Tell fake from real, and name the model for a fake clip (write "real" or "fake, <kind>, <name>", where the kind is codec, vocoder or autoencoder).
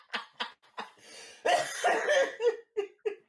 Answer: real